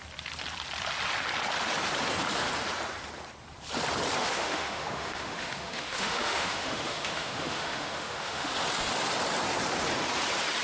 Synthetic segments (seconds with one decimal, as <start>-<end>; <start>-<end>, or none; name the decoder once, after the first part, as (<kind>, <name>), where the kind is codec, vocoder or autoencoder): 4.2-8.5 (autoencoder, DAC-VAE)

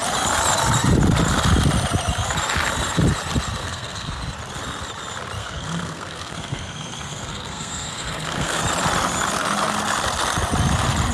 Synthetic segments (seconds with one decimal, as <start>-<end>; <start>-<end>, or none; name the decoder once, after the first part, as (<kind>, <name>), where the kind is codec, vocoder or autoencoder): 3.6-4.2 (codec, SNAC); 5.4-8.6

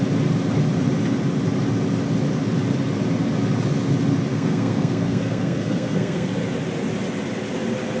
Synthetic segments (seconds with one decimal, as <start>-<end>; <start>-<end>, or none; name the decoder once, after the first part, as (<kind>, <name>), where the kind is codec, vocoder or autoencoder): 4.3-6.3 (codec, SNAC)

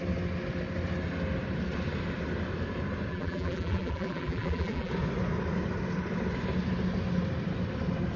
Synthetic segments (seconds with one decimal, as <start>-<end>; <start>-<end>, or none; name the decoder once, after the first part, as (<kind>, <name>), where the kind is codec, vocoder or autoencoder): 3.1-4.9 (vocoder, BigVGAN v2)

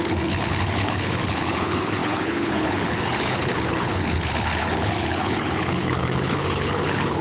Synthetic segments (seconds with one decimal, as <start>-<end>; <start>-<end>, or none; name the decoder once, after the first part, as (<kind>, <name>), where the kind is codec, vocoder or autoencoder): 0.0-7.2 (codec, HILCodec)

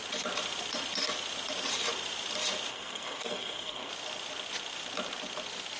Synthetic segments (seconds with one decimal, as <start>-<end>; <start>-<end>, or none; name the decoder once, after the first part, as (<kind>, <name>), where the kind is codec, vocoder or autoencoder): 2.7-3.9 (codec, SNAC)